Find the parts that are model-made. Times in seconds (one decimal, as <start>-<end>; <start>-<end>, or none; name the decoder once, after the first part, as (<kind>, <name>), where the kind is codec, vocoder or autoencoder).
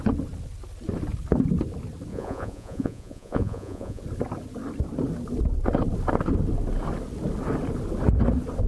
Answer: 2.1-4.0 (vocoder, Vocos)